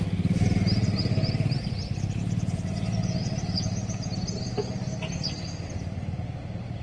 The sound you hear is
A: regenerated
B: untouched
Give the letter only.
B